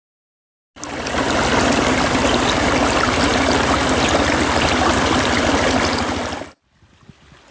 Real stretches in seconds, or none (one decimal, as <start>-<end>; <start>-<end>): 0.0-7.5